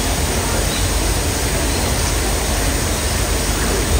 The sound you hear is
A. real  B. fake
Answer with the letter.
A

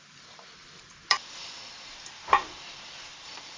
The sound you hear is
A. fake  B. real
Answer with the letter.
A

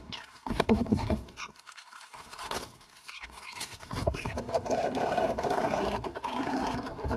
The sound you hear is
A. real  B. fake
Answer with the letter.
B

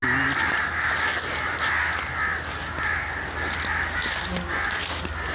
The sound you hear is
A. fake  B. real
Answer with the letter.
B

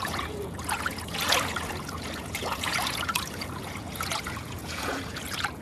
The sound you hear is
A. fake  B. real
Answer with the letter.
A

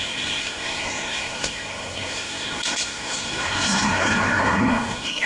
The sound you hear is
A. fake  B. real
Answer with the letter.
A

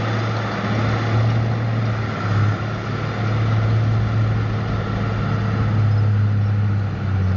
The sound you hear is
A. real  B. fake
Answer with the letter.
A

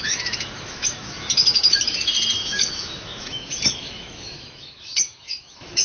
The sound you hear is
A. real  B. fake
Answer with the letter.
B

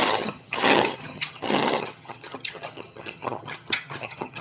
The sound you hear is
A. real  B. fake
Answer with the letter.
B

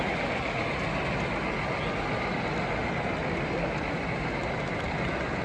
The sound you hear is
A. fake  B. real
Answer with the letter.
B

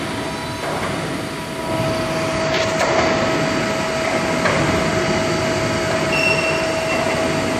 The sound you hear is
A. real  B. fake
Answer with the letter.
A